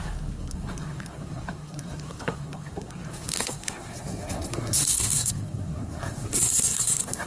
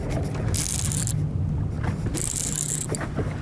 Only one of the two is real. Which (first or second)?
second